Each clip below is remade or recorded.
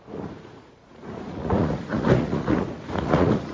remade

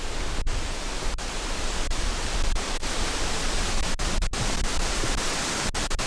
recorded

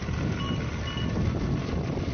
recorded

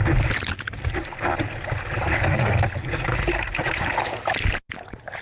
recorded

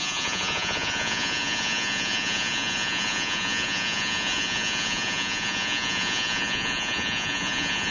remade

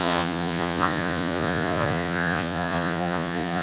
remade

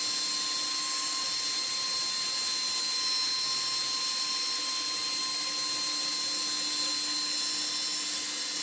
recorded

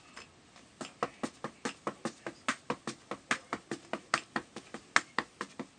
recorded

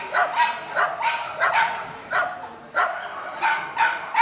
recorded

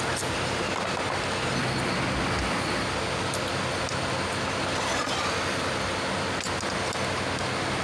recorded